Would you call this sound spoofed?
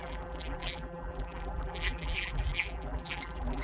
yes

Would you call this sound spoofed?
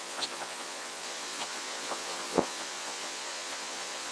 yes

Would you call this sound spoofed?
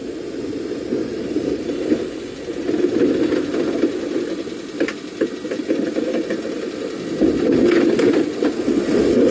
no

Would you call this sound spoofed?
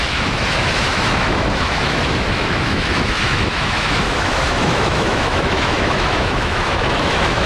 yes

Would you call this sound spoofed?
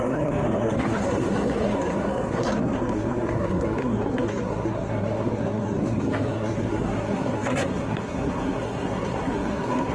yes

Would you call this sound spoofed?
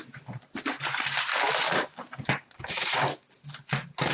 no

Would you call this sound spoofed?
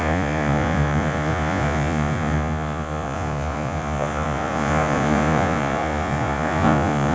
yes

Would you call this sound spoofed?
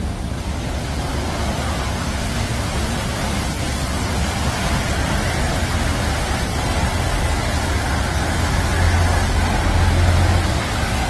no